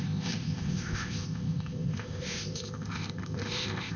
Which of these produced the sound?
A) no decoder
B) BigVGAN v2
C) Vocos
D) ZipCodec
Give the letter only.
D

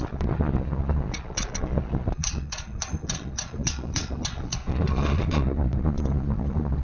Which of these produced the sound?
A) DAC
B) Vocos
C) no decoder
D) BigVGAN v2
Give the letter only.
B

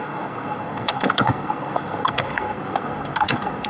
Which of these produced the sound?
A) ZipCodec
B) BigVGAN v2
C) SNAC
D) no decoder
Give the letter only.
C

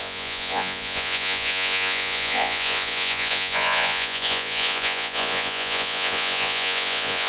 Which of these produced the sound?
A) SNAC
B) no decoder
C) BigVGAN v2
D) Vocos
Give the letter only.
D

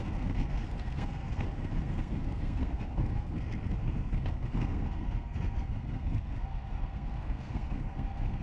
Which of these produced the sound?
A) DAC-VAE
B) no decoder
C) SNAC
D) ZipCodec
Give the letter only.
C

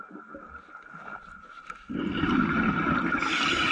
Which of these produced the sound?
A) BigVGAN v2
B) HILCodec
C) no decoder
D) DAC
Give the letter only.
C